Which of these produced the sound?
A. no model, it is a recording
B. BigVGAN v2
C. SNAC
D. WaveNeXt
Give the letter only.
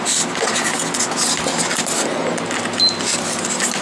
A